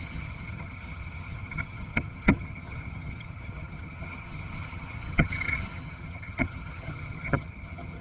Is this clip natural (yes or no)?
no